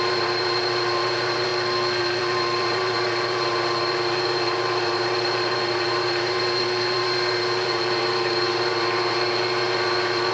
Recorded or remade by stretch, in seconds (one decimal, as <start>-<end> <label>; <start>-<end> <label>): 0.0-1.5 remade; 1.5-2.0 recorded; 2.0-10.3 remade